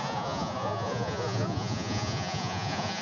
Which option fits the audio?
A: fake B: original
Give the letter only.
A